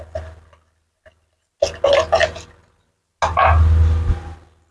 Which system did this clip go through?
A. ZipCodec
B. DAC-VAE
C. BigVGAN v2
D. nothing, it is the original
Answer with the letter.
D